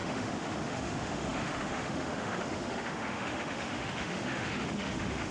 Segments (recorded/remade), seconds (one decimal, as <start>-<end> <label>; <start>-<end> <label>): 0.0-5.3 remade